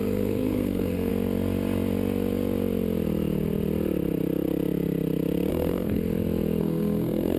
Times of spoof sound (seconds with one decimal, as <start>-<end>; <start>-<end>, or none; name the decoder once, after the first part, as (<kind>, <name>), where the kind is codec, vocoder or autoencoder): 0.0-1.1 (codec, SNAC); 5.5-6.0; 6.6-7.4